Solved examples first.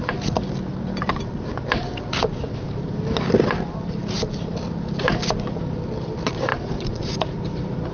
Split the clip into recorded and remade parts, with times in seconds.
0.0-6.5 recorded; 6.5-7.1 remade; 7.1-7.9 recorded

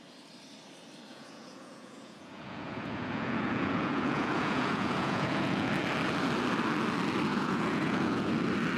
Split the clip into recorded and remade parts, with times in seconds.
0.0-1.1 recorded; 1.1-5.7 remade; 5.7-7.3 recorded; 7.3-8.3 remade; 8.3-8.8 recorded

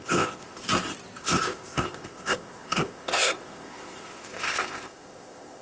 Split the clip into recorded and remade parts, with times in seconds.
0.0-0.6 remade; 0.6-1.2 recorded; 1.2-5.6 remade

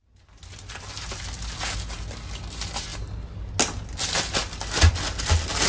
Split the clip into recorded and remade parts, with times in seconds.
0.0-5.7 recorded

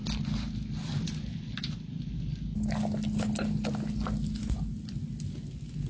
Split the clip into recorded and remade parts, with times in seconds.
0.0-5.9 recorded

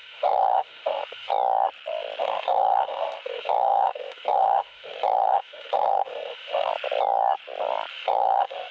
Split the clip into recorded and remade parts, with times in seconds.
0.0-1.3 remade; 1.3-2.2 recorded; 2.2-6.7 remade; 6.7-7.9 recorded; 7.9-8.7 remade